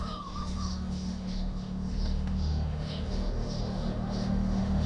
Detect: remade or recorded remade